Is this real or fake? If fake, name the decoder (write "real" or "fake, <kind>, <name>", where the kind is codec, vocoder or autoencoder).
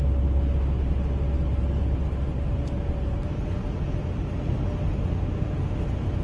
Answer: real